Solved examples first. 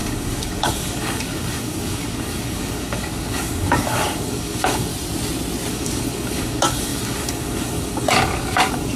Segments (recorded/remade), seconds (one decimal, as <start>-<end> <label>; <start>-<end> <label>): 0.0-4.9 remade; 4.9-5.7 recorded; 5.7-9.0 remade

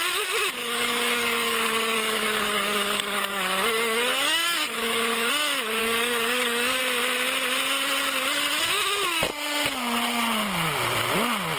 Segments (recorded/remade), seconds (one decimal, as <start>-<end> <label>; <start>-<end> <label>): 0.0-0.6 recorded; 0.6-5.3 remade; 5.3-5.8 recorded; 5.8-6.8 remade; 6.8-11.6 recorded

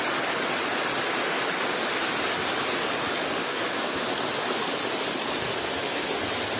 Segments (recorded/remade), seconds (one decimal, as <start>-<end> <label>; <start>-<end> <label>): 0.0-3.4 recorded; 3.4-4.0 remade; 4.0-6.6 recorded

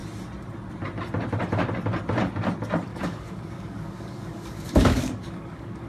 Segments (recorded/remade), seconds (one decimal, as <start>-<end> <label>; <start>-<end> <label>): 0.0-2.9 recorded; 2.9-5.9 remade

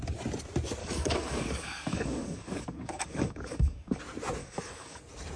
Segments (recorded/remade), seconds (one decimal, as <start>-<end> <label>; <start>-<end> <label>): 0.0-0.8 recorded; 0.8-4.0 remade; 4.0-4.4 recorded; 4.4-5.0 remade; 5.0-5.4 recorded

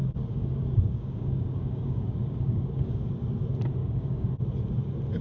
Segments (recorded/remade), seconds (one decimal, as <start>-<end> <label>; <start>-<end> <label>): 0.0-3.1 remade; 3.1-3.8 recorded; 3.8-4.3 remade; 4.3-5.2 recorded